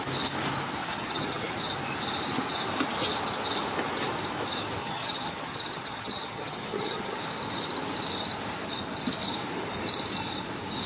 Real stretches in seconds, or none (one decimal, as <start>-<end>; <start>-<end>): 0.0-0.8; 1.6-4.8; 7.2-10.9